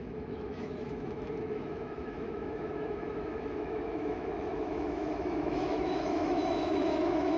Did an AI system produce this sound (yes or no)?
yes